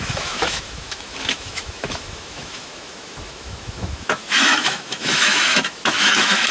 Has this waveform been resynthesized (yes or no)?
yes